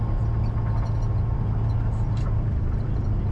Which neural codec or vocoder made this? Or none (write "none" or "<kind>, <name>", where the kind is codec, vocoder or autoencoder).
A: none